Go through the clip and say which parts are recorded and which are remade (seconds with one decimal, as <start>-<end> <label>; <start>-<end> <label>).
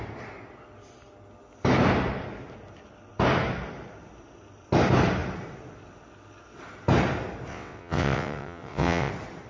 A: 0.0-7.5 recorded; 7.5-9.1 remade; 9.1-9.5 recorded